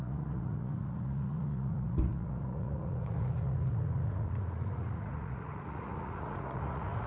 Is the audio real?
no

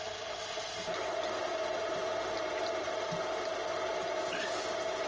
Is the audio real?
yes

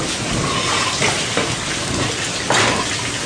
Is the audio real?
yes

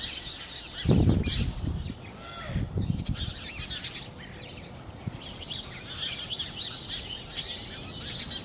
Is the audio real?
yes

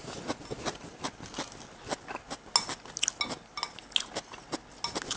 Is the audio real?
yes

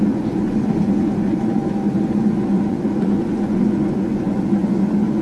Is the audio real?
no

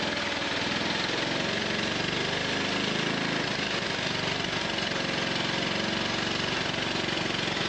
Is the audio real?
yes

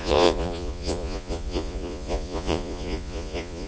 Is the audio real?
no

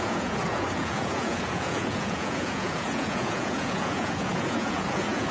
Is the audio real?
no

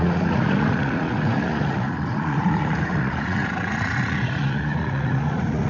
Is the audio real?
no